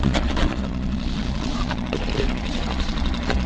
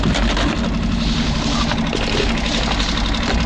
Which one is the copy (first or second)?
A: first